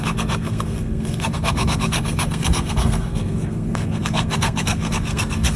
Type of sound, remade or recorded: remade